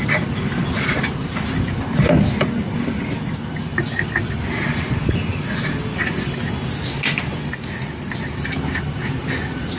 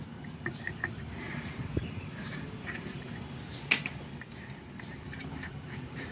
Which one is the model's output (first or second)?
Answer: second